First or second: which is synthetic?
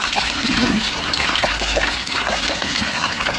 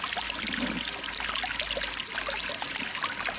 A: first